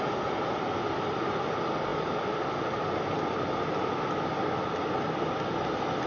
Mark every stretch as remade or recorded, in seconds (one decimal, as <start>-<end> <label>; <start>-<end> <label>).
0.0-6.1 recorded